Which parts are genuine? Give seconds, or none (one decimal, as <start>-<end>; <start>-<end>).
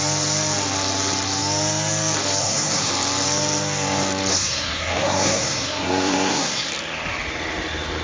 0.0-2.4; 2.9-4.3; 6.7-8.0